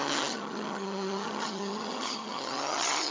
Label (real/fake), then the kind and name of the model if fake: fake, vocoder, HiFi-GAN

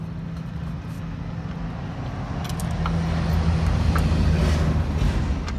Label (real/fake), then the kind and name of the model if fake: real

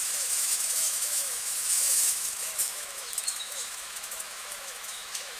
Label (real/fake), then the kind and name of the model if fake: fake, autoencoder, DAC-VAE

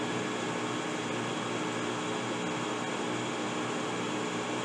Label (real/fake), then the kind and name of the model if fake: real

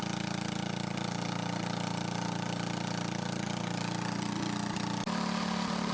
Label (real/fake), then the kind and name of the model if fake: real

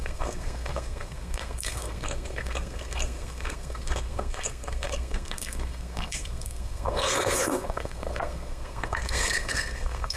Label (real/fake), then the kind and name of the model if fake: fake, codec, SNAC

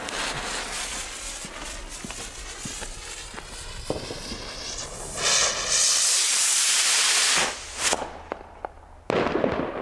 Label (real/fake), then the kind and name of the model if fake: real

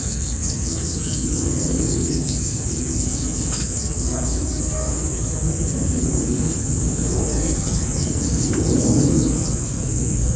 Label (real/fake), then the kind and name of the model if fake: fake, codec, SNAC